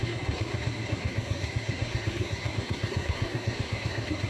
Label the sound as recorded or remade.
remade